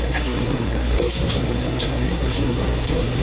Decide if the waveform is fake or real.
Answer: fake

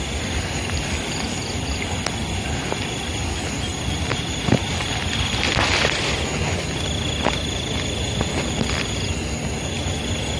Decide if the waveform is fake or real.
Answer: real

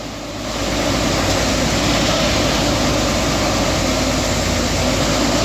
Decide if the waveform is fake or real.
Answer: real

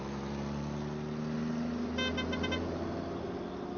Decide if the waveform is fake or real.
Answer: real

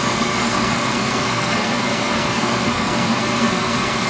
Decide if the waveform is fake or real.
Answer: fake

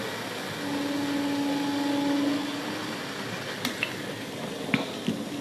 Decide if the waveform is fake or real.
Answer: real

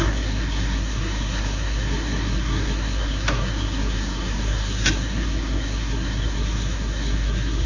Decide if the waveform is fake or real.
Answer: fake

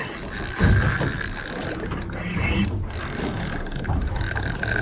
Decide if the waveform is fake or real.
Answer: real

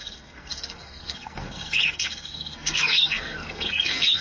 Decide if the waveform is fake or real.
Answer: fake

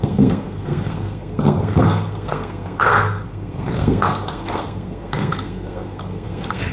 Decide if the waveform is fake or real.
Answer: fake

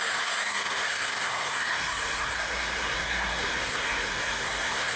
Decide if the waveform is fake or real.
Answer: fake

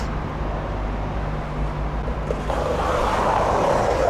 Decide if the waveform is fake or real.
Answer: real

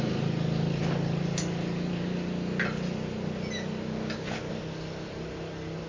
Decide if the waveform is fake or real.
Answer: real